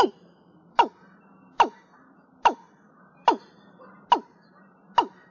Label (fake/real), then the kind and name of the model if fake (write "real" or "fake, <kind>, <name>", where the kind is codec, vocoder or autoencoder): real